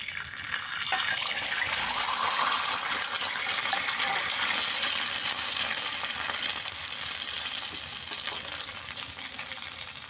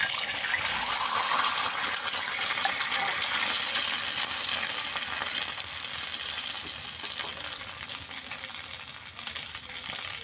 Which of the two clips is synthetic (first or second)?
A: first